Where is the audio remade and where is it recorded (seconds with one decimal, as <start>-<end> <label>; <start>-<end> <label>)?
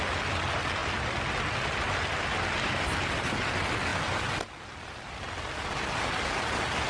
0.0-6.9 recorded